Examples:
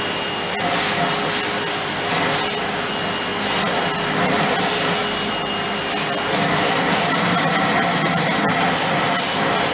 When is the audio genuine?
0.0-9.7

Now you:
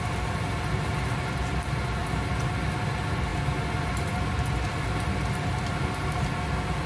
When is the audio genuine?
0.0-6.9

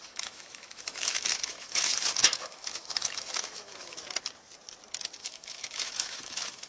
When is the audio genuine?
4.0-5.2

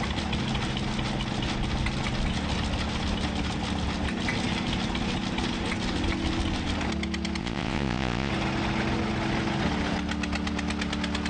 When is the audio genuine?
0.0-7.4; 8.3-11.3

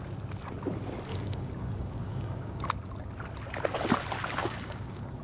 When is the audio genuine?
0.0-1.1; 2.7-4.4

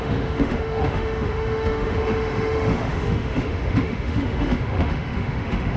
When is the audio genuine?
none

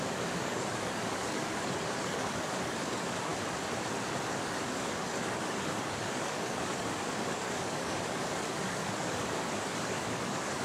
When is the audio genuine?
3.3-4.3